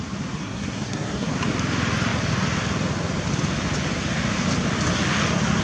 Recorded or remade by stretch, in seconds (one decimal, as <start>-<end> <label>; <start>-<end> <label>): 0.0-0.4 recorded; 0.4-1.3 remade; 1.3-5.6 recorded